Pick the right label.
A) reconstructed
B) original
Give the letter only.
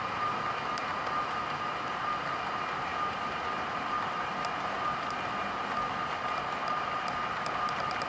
B